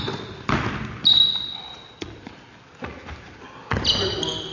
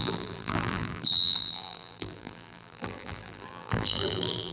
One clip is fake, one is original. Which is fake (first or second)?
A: second